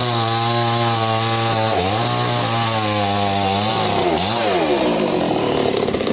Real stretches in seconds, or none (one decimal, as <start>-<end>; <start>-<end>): 0.0-5.4